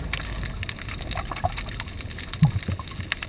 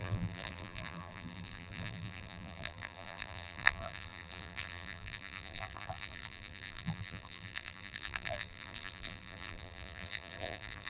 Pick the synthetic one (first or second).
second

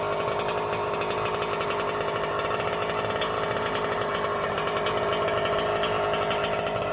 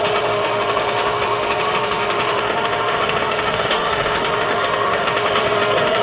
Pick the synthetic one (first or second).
second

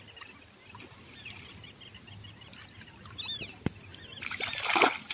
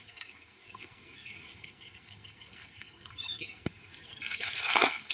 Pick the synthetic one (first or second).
second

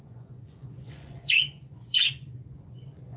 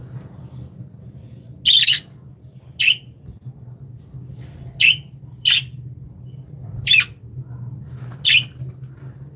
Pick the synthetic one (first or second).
first